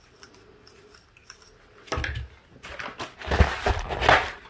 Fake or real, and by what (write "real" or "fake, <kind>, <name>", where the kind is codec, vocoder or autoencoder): real